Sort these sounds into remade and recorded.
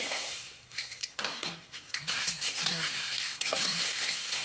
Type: remade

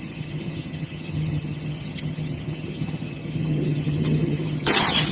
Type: remade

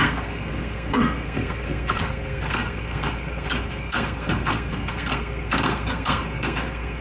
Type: remade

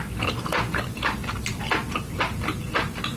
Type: recorded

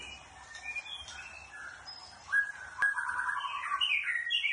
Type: recorded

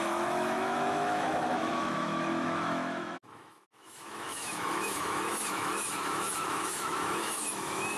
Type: remade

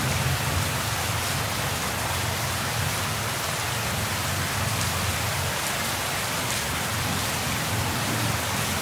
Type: recorded